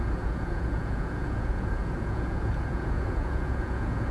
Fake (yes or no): yes